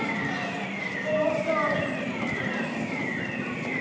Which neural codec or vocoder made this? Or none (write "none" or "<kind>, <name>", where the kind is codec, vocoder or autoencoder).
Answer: none